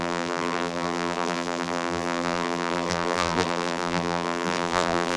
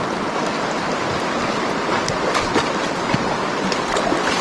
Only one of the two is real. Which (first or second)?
second